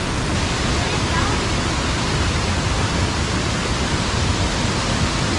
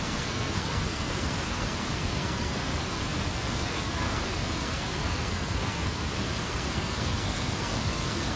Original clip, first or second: first